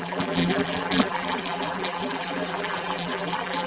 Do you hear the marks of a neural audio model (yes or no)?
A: yes